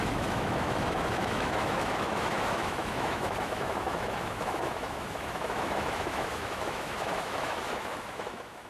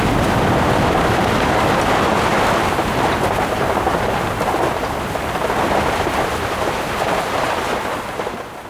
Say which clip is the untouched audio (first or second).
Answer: second